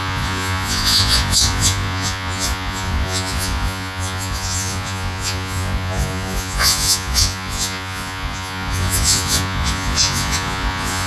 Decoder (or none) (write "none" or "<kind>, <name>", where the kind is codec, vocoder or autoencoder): vocoder, Vocos